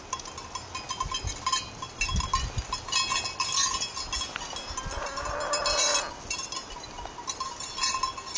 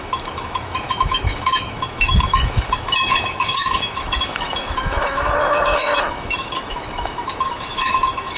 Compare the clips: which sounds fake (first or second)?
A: second